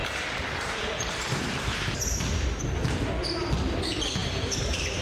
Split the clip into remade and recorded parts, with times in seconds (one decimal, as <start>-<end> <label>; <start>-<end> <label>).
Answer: 0.0-3.0 remade; 3.0-4.2 recorded; 4.2-5.0 remade